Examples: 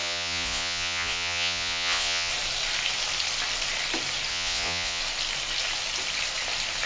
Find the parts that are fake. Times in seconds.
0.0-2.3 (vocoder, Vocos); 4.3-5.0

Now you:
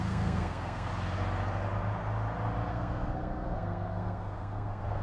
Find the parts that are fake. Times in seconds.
0.0-0.9 (codec, SNAC); 2.7-5.0

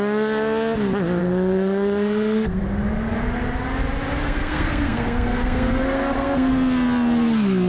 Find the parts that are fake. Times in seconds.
1.2-2.6 (codec, SNAC); 4.2-6.5

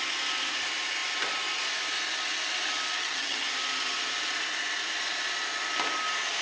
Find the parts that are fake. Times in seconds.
3.0-3.5 (vocoder, HiFi-GAN)